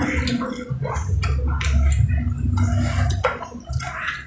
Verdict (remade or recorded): recorded